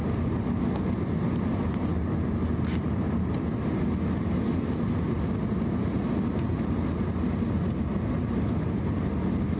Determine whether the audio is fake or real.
real